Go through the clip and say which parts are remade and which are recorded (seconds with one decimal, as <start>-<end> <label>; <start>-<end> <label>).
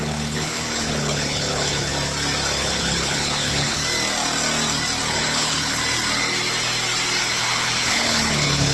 0.0-1.9 remade; 1.9-2.6 recorded; 2.6-3.8 remade; 3.8-5.1 recorded; 5.1-5.8 remade; 5.8-7.2 recorded; 7.2-8.7 remade